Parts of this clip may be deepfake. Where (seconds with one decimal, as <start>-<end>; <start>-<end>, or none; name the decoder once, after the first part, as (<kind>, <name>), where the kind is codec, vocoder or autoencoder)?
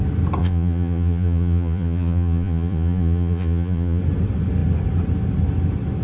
0.4-4.0 (vocoder, Vocos)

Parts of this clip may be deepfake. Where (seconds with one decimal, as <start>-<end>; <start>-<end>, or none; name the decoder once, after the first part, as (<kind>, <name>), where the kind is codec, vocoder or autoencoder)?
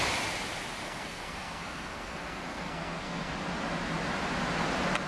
0.8-3.3 (codec, SNAC)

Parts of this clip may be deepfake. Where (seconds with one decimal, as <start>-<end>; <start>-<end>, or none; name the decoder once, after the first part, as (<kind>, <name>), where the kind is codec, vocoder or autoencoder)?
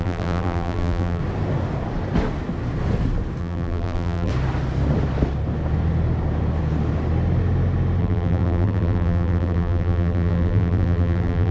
0.0-1.2 (vocoder, BigVGAN v2); 3.4-4.3; 8.0-11.5